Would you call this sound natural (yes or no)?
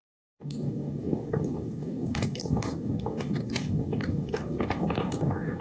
no